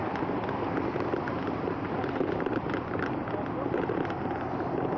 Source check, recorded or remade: recorded